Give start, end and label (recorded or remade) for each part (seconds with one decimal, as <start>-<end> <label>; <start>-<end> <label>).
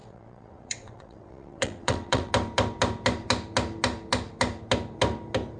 0.0-2.3 remade; 2.3-5.6 recorded